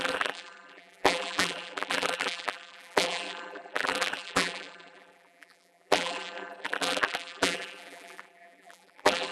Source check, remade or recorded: remade